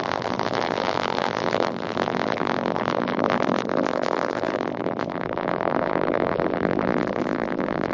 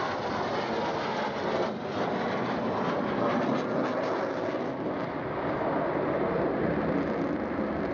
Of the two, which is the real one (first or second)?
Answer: second